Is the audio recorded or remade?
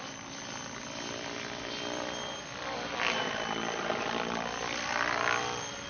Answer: remade